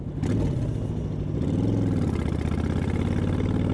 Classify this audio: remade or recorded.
recorded